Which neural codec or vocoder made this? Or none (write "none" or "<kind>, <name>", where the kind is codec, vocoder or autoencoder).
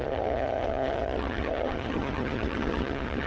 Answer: vocoder, HiFi-GAN